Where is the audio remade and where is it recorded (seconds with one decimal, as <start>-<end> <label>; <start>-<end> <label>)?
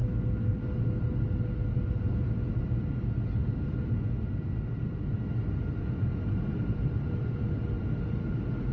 0.0-8.7 recorded